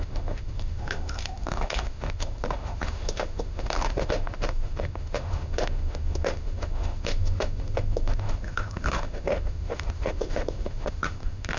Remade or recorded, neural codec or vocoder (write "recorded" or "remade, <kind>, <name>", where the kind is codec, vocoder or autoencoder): remade, autoencoder, DAC-VAE